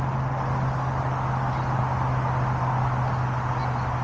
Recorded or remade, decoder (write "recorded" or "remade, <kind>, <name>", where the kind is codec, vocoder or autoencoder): recorded